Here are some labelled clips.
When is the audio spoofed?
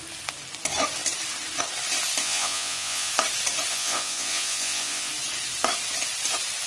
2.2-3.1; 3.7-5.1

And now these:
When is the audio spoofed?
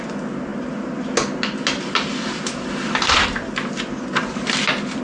none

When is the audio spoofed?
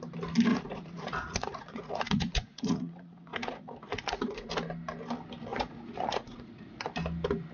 0.5-4.5; 5.5-6.8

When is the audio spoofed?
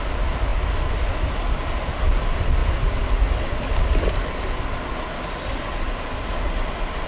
none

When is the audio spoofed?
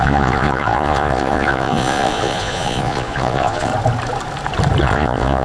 0.0-3.7; 4.8-5.4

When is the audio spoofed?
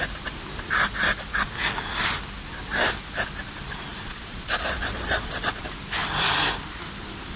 3.9-5.6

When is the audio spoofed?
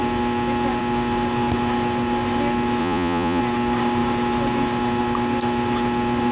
2.8-3.4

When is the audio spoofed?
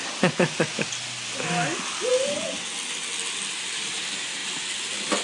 none